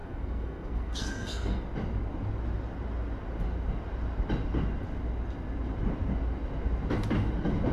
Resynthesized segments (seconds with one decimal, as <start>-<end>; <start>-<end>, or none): 0.0-1.6